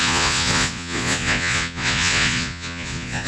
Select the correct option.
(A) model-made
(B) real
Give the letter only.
A